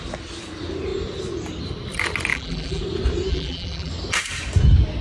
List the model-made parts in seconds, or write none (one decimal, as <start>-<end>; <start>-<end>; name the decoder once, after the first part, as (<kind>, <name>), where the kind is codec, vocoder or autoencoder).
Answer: 2.3-2.8 (vocoder, BigVGAN v2); 3.3-3.9

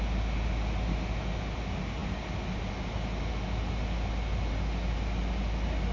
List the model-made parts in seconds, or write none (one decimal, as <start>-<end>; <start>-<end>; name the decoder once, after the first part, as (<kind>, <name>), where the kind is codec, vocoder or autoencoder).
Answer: none

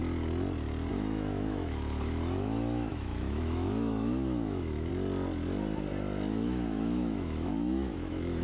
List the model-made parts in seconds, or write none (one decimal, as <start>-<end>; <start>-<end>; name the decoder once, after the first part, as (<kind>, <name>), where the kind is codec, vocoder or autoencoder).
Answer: 0.9-4.9 (autoencoder, DAC-VAE); 6.3-8.4

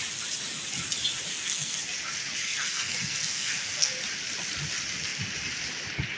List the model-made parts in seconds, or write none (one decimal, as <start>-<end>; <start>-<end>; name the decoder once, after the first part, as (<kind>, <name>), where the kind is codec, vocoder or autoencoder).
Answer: 1.3-1.8 (codec, SNAC); 2.4-3.9

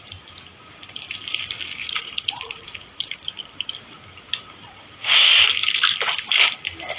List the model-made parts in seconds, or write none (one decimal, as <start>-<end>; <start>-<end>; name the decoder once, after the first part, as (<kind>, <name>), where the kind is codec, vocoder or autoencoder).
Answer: 1.8-3.1 (vocoder, Vocos)

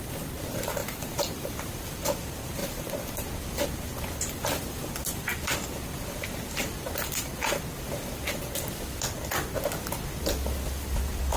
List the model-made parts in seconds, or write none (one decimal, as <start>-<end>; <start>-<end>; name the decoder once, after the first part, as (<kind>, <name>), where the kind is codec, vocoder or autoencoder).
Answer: 0.8-1.7 (vocoder, BigVGAN v2); 2.6-3.3